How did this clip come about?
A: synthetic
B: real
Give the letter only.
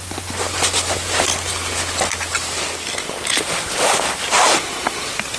B